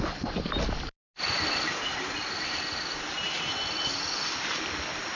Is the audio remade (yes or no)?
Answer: no